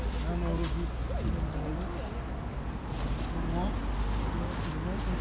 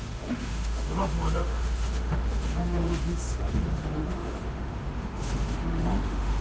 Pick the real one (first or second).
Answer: first